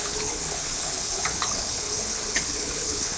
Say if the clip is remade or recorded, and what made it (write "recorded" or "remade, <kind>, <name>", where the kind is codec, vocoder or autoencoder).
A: remade, codec, HILCodec